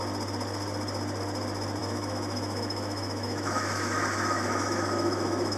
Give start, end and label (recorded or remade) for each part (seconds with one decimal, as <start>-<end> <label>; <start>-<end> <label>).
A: 0.0-1.8 recorded; 1.8-5.6 remade